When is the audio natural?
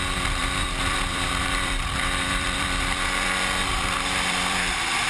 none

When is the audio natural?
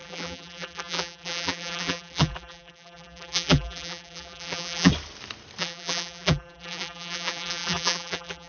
4.9-5.6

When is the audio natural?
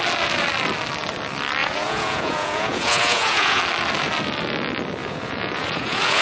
0.0-1.6; 3.6-5.0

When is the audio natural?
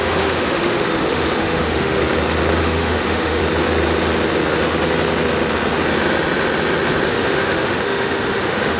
2.0-2.6; 3.4-7.1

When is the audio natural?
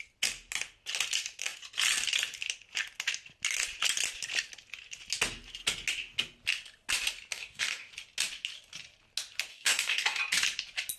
0.0-7.3; 7.9-9.5; 10.2-11.0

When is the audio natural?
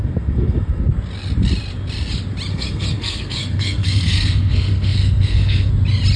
0.9-2.5; 5.7-6.2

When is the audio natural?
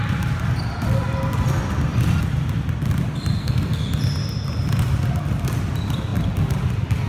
0.0-3.4; 3.9-7.1